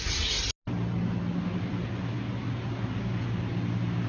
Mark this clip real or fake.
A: real